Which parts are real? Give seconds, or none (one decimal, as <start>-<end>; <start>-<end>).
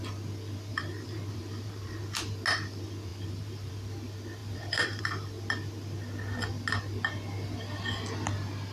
0.0-0.7; 2.0-3.1; 3.7-4.4; 5.0-8.7